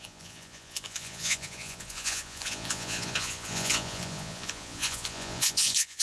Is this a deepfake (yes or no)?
yes